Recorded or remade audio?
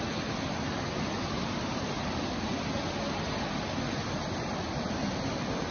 recorded